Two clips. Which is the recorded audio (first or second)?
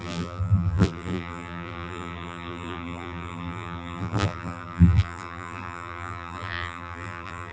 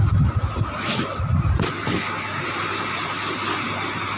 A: second